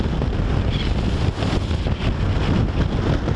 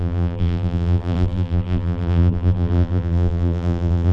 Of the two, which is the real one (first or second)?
first